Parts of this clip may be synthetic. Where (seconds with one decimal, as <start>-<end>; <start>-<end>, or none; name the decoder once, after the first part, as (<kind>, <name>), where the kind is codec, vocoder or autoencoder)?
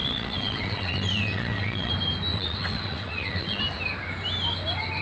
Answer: 0.0-1.9 (vocoder, WaveNeXt); 2.3-3.6